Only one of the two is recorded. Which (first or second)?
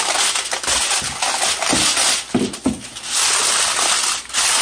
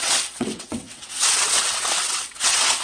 first